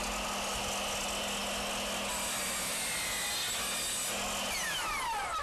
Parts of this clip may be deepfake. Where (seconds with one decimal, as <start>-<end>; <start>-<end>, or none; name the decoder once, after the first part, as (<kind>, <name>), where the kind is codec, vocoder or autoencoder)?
none